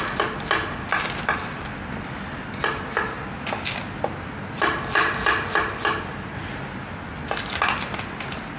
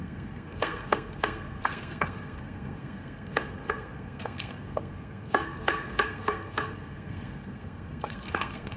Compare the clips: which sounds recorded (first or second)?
first